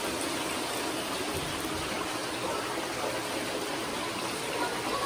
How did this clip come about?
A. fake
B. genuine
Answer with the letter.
B